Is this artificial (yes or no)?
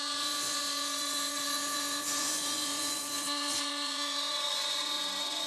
yes